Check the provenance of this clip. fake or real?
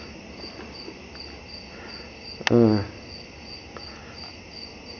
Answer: real